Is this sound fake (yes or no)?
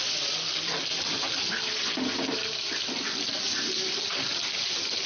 no